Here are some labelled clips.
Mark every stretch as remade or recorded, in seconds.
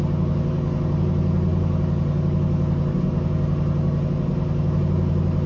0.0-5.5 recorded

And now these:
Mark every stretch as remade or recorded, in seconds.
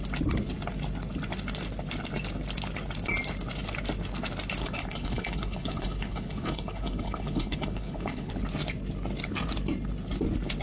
0.0-4.6 recorded; 4.6-8.3 remade; 8.3-10.6 recorded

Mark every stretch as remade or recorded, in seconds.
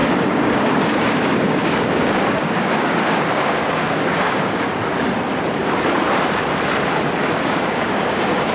0.0-4.8 remade; 4.8-7.4 recorded; 7.4-8.5 remade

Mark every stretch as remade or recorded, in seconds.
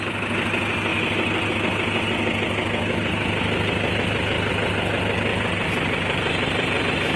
0.0-5.3 recorded; 5.3-6.8 remade; 6.8-7.2 recorded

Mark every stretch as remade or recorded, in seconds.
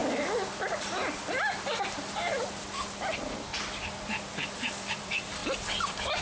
0.0-3.0 recorded; 3.0-3.5 remade; 3.5-4.5 recorded; 4.5-6.2 remade